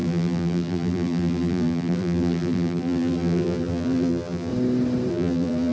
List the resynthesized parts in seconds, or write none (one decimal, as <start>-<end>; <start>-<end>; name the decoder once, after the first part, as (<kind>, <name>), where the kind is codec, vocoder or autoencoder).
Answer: 0.0-4.5 (vocoder, BigVGAN v2); 5.1-5.7